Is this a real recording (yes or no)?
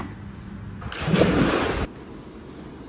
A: yes